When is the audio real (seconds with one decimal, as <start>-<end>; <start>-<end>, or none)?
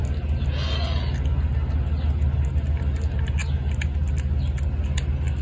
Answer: 0.0-5.4